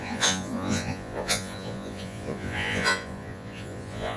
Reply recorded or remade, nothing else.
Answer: remade